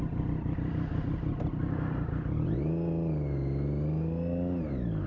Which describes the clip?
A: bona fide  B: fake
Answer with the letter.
A